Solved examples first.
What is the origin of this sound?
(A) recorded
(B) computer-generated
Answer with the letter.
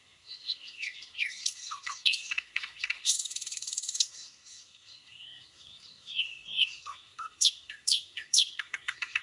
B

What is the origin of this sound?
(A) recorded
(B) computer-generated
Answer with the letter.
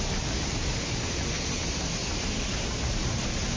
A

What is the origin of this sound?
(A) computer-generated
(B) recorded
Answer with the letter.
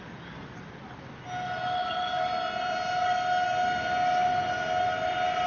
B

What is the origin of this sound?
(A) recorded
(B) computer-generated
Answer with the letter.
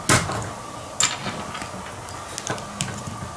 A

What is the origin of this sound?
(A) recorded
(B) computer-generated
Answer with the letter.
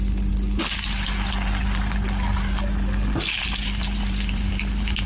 A